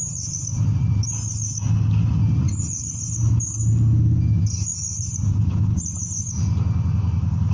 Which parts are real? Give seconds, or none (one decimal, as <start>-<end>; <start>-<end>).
0.0-0.5; 1.0-4.7; 5.6-7.5